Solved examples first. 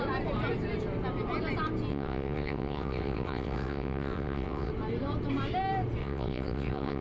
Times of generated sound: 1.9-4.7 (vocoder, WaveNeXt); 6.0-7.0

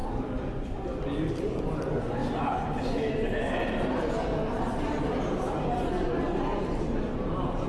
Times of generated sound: none

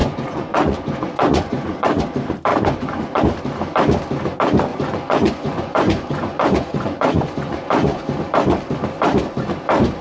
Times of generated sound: 0.0-2.0 (vocoder, Vocos); 2.5-3.2; 4.7-8.2

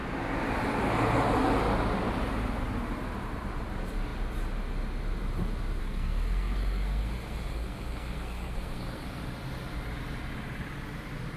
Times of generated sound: 5.8-9.2 (codec, SNAC)

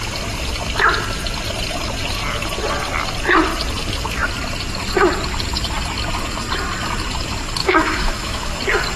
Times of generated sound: 7.6-8.5 (autoencoder, DAC-VAE)

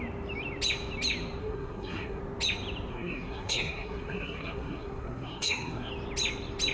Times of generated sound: 1.4-2.2 (codec, SNAC); 2.9-5.9

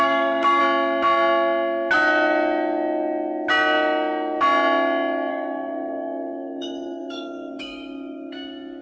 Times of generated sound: 0.0-0.6 (codec, DAC); 5.3-8.8